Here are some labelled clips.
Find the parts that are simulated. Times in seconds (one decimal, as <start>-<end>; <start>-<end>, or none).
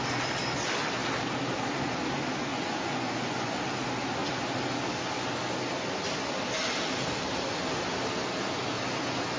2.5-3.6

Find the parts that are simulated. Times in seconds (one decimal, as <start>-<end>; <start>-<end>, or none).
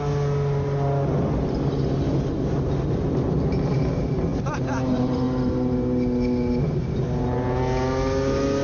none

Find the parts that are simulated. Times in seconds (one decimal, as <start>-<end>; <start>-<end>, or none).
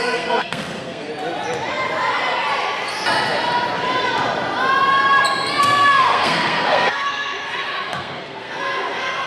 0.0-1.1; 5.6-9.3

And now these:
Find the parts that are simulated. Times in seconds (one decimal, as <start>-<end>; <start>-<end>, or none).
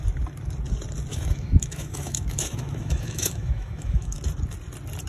1.1-4.2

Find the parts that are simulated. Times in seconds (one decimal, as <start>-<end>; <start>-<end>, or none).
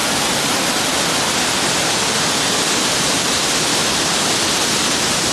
none